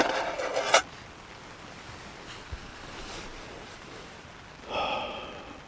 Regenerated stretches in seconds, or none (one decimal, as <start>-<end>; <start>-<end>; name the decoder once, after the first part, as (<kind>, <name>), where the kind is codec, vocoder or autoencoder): 2.7-4.3 (vocoder, BigVGAN v2)